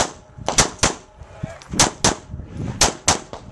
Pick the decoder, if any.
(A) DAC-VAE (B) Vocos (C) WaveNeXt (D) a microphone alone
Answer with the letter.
D